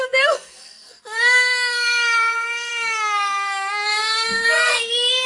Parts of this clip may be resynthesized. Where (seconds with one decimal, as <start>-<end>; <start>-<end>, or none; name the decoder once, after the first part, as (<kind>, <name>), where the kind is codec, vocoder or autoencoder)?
0.0-5.3 (codec, SNAC)